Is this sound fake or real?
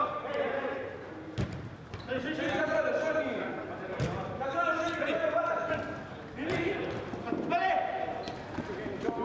real